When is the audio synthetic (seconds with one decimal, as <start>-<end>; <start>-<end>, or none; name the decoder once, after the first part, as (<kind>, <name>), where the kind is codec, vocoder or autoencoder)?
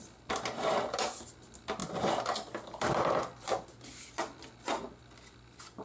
1.8-4.5 (vocoder, BigVGAN v2)